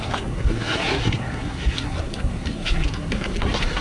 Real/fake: fake